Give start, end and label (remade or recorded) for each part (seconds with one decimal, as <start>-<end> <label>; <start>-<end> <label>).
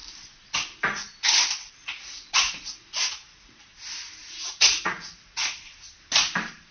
0.0-1.7 recorded; 1.7-3.7 remade; 3.7-4.5 recorded; 4.5-5.4 remade; 5.4-6.7 recorded